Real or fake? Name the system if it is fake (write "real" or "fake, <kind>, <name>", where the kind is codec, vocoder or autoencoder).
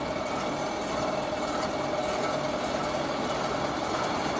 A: real